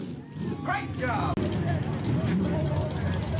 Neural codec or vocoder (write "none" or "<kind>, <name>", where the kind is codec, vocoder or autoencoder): none